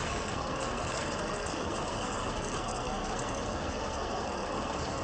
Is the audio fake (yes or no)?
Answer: yes